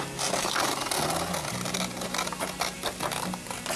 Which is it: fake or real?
real